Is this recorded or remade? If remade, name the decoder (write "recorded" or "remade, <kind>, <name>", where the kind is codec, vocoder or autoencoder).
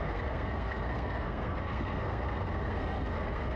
remade, codec, SNAC